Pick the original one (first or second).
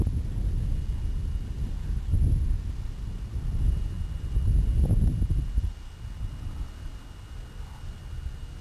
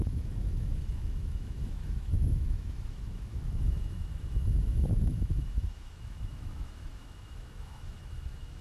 first